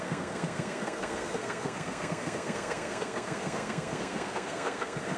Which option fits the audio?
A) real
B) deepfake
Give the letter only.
B